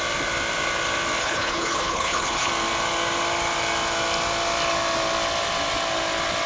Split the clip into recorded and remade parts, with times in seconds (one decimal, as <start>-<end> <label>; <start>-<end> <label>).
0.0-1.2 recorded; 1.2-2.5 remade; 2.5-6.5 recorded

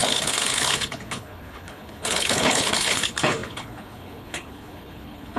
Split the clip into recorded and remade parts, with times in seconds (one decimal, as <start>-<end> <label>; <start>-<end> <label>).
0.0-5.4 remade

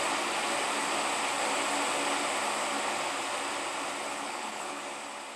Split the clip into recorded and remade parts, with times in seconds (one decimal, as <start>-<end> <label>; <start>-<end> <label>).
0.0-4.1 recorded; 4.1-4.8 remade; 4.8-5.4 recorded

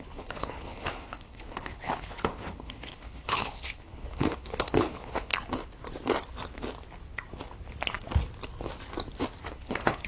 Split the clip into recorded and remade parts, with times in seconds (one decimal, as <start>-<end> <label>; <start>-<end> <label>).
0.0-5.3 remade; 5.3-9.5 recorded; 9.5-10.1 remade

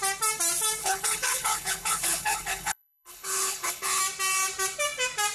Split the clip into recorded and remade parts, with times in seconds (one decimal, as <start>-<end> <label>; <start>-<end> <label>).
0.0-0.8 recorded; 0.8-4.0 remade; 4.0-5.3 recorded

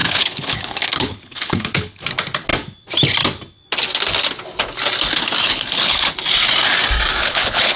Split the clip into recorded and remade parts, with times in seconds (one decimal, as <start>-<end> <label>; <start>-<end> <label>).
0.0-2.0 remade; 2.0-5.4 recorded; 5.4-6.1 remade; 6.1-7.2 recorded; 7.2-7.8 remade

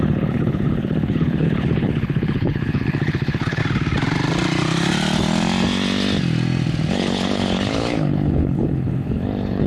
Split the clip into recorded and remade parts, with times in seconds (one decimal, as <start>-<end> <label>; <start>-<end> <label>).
0.0-3.6 remade; 3.6-6.9 recorded; 6.9-9.7 remade